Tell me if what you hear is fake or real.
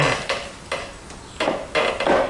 real